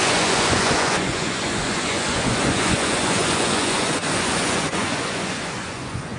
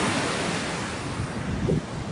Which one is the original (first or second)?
second